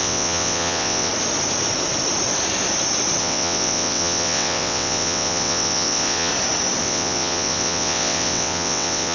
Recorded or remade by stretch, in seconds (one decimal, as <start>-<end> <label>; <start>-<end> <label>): 0.0-1.1 remade; 1.1-3.2 recorded; 3.2-6.3 remade; 6.3-6.8 recorded; 6.8-9.1 remade